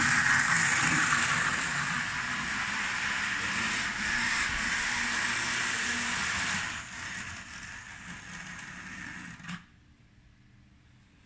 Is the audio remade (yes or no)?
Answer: no